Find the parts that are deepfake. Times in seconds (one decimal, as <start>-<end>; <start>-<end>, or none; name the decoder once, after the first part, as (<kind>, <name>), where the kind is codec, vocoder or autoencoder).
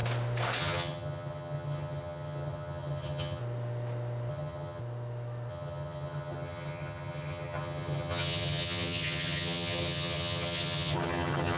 0.6-3.4 (vocoder, HiFi-GAN); 4.3-4.8; 5.5-11.6